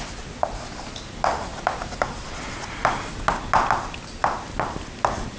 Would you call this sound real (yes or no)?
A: yes